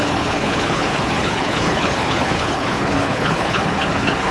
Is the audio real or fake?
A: fake